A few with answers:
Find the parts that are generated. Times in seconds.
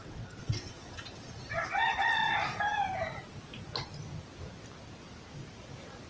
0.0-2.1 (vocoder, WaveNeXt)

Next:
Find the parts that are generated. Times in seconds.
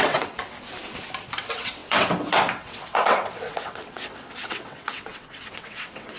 0.0-0.4 (vocoder, WaveNeXt); 1.4-6.2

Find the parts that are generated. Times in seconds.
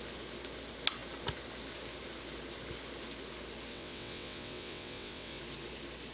3.7-5.4 (vocoder, WaveNeXt)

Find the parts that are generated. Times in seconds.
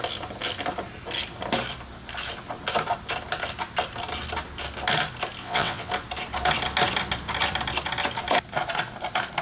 5.4-5.9 (vocoder, WaveNeXt)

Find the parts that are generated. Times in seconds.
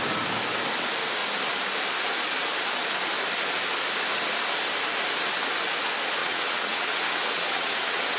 6.2-8.2 (vocoder, WaveNeXt)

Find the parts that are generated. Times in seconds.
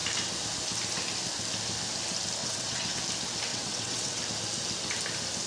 2.4-3.0 (vocoder, WaveNeXt); 3.5-4.2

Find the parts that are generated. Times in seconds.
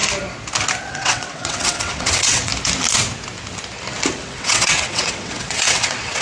0.9-2.5 (vocoder, WaveNeXt); 4.2-6.2